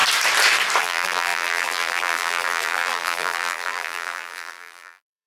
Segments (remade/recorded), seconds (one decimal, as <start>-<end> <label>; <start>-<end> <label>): 0.0-0.8 recorded; 0.8-5.3 remade